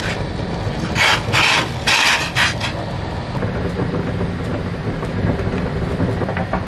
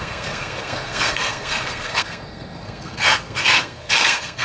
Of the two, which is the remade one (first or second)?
second